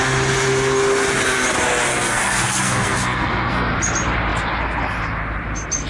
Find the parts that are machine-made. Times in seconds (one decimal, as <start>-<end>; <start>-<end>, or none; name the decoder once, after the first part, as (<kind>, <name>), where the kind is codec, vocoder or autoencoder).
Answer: 1.9-3.7 (codec, SNAC)